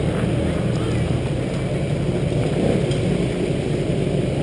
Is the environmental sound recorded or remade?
recorded